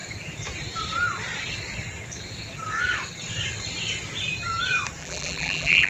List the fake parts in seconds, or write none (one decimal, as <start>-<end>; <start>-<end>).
5.0-5.9